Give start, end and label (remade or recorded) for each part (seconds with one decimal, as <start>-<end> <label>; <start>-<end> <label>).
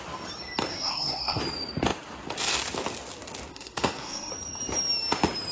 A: 0.0-0.7 recorded; 0.7-1.4 remade; 1.4-3.5 recorded; 3.5-4.3 remade; 4.3-5.5 recorded